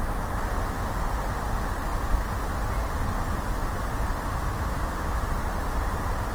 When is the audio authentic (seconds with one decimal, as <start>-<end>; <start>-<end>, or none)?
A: 0.0-6.3